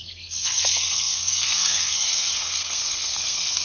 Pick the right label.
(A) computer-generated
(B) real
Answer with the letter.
A